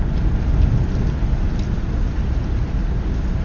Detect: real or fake real